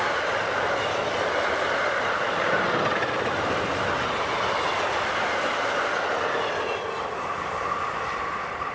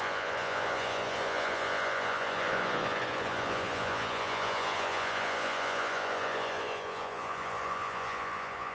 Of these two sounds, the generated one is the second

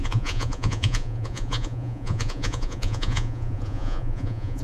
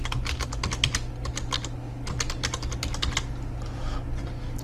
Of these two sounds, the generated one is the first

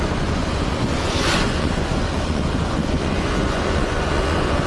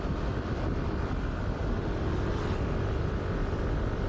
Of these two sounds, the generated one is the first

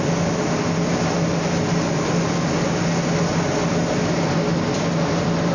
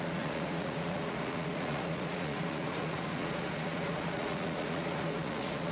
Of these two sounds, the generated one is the second